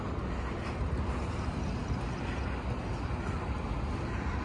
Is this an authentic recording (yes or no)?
yes